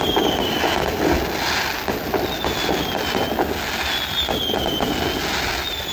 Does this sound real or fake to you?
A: real